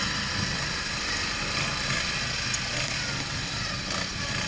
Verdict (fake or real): real